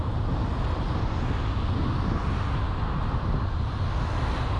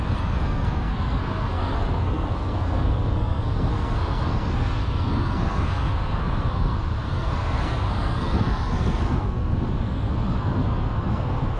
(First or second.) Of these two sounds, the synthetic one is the second